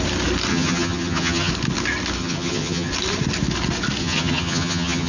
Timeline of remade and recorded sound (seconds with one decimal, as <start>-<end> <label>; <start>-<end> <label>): 0.0-0.5 recorded; 0.5-1.5 remade; 1.5-2.2 recorded; 2.2-2.9 remade; 2.9-4.0 recorded; 4.0-5.1 remade